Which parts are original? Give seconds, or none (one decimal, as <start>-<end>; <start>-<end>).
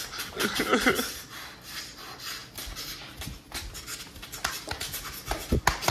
0.0-5.9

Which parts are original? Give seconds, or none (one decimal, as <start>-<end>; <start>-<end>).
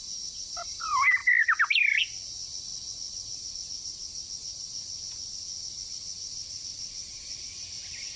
0.0-8.2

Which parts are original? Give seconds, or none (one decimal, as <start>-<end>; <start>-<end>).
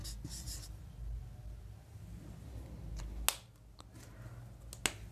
0.0-5.1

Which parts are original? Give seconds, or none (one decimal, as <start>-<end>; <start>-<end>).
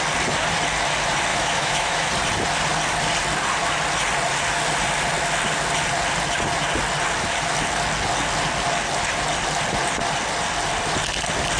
0.0-1.3; 2.1-11.6